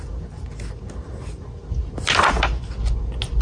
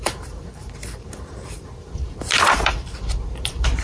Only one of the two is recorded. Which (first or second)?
first